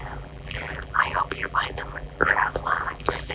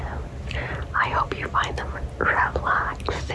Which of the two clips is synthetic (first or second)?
first